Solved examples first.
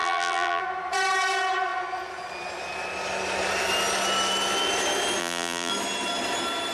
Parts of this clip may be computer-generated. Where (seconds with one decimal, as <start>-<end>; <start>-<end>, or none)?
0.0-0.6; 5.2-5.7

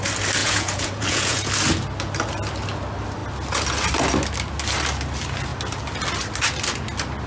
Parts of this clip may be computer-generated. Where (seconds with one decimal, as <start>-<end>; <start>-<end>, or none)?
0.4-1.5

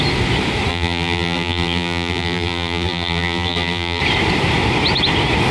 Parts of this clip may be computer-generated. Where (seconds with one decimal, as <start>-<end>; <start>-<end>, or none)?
0.7-4.0

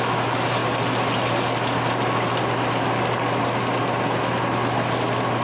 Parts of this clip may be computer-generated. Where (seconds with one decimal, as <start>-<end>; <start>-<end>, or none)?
none

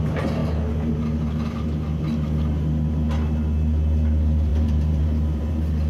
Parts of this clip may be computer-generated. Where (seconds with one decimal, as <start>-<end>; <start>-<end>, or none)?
4.5-5.5

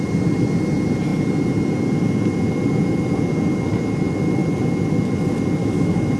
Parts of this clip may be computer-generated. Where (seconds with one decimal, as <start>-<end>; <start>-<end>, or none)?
5.6-6.2